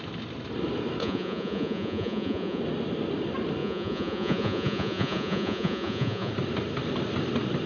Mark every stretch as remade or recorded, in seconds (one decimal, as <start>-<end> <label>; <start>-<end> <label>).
0.0-1.0 recorded; 1.0-2.6 remade; 2.6-3.6 recorded; 3.6-6.3 remade; 6.3-7.7 recorded